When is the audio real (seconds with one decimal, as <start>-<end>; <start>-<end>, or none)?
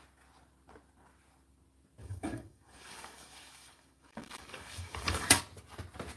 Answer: 0.0-2.0; 5.4-6.2